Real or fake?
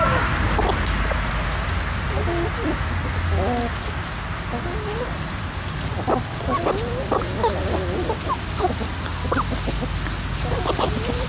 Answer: real